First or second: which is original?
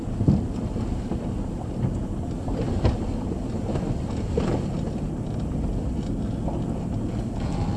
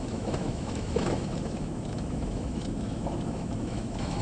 first